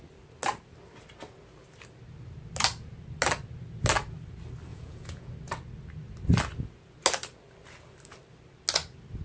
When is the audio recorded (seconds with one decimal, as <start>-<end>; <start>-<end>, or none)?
0.0-4.7; 5.3-9.2